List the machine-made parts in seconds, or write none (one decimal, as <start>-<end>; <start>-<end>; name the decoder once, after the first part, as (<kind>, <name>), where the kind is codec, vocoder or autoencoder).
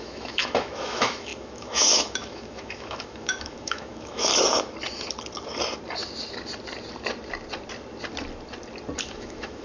0.0-4.3 (autoencoder, DAC-VAE); 9.0-9.6